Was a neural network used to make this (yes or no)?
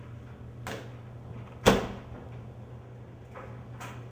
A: no